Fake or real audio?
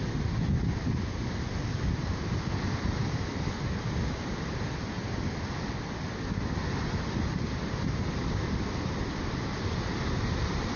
real